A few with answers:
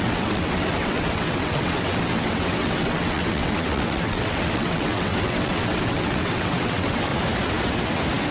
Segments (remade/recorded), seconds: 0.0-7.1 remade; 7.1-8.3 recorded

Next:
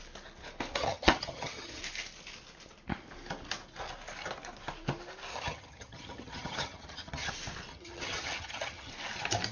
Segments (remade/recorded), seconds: 0.0-0.8 recorded; 0.8-1.8 remade; 1.8-5.3 recorded; 5.3-7.3 remade; 7.3-7.7 recorded; 7.7-8.9 remade; 8.9-9.5 recorded